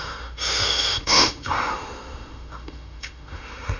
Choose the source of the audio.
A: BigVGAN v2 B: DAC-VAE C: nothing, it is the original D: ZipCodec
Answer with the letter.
B